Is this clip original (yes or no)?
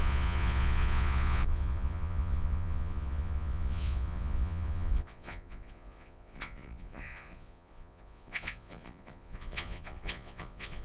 no